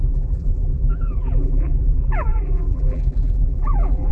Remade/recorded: remade